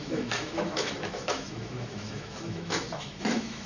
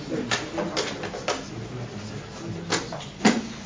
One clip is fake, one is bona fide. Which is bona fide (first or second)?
second